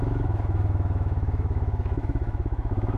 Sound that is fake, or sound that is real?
fake